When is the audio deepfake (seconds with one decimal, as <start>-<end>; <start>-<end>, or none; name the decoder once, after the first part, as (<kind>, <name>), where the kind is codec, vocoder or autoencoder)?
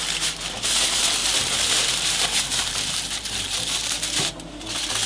1.2-4.3 (vocoder, BigVGAN v2)